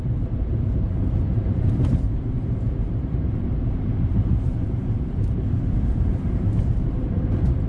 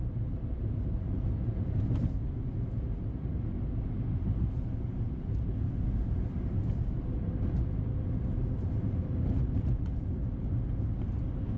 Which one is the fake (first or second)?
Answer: first